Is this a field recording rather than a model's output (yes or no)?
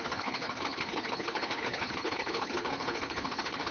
no